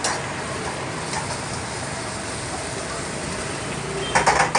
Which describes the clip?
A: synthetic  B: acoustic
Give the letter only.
B